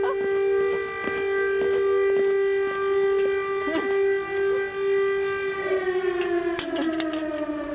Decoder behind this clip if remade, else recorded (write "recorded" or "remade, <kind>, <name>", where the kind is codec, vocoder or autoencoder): recorded